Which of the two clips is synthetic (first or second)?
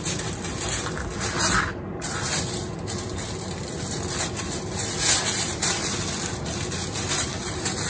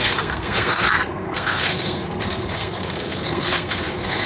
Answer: second